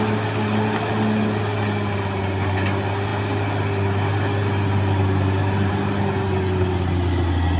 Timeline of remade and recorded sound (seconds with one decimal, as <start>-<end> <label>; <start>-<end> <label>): 0.0-7.6 recorded